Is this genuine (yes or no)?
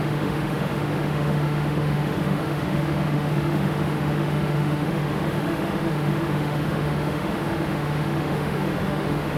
no